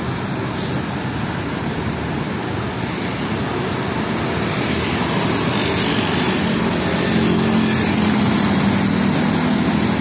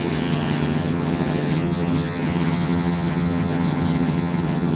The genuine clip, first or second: first